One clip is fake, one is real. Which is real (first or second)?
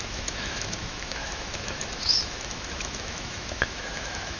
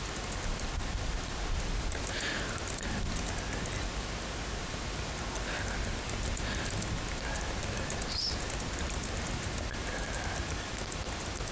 second